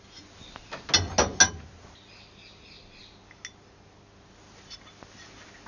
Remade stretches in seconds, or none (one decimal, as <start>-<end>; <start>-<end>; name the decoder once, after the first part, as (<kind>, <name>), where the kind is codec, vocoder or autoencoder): none